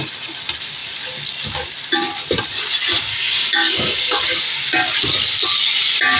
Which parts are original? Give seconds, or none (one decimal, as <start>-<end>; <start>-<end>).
0.0-3.1; 4.4-6.2